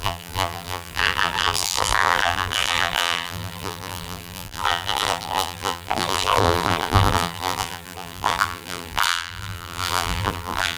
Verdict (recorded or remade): remade